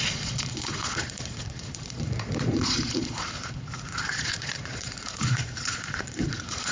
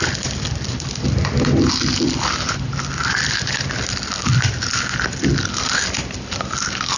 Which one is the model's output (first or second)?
first